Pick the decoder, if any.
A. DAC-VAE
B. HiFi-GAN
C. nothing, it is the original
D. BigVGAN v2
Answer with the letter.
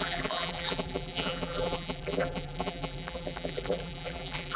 D